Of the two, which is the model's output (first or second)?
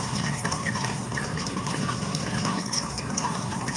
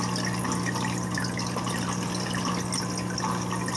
first